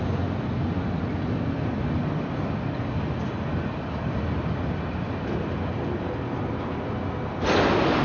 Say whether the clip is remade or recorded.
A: recorded